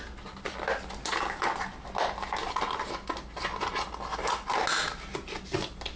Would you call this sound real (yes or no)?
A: yes